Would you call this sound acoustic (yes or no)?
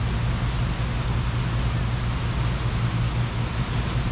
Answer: yes